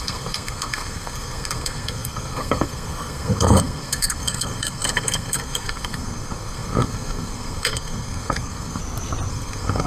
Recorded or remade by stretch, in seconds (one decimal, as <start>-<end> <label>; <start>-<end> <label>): 0.0-8.8 remade; 8.8-9.3 recorded; 9.3-9.9 remade